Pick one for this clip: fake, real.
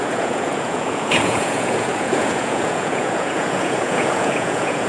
fake